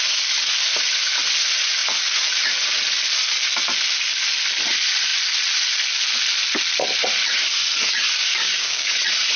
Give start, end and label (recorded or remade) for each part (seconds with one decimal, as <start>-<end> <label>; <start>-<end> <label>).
0.0-8.4 recorded; 8.4-8.9 remade; 8.9-9.4 recorded